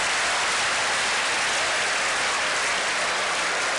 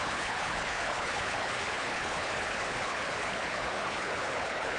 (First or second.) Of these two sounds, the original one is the first